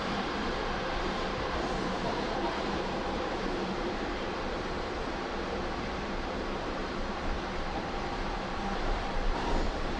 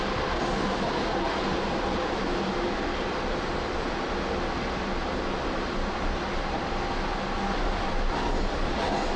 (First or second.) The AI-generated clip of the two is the first